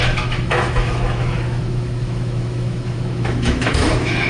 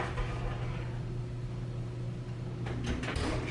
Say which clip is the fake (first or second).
first